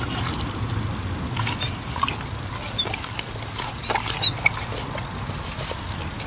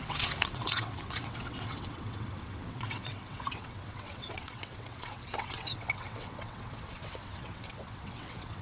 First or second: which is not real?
second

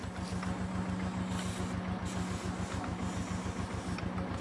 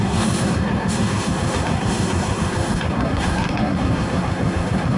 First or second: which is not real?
second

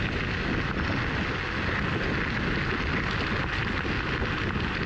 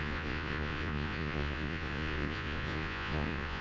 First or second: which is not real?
second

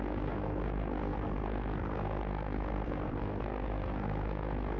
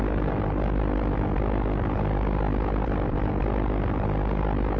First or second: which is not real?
first